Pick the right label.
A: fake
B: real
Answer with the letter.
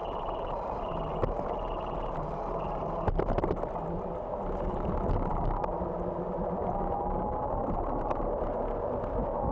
B